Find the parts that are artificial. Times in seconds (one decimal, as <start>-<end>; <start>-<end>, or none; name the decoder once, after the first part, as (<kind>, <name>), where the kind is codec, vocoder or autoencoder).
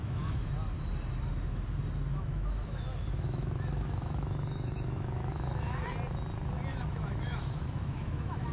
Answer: 0.0-0.5 (autoencoder, DAC-VAE); 2.1-5.9; 6.7-8.5